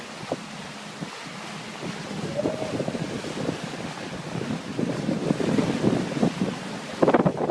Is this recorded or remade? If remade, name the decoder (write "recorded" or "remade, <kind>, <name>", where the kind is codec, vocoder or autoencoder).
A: recorded